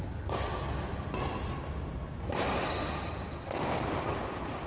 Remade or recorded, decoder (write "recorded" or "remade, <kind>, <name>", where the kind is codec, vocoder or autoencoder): recorded